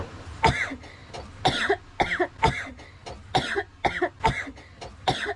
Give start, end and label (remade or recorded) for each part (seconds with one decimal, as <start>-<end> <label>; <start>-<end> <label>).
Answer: 0.0-5.4 recorded